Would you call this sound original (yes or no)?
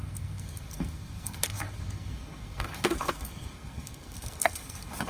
no